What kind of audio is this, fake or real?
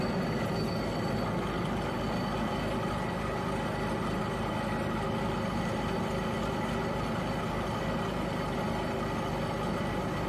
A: real